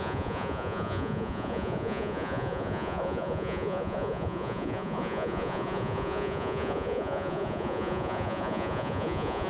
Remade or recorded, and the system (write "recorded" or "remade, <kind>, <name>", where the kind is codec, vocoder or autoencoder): remade, vocoder, Vocos